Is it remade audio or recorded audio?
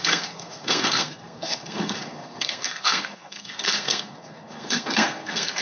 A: remade